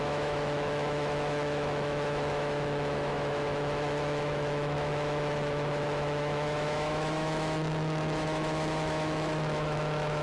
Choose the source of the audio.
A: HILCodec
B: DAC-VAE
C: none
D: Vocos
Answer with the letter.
B